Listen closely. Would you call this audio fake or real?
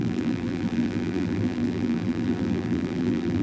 fake